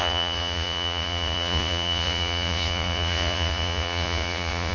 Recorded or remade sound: remade